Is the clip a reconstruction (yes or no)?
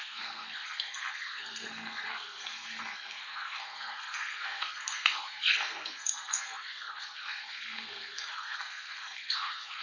yes